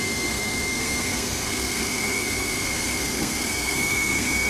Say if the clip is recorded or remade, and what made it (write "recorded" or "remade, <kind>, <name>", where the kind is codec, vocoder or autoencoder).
remade, codec, SNAC